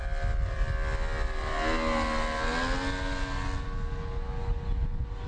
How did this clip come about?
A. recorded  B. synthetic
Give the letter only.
A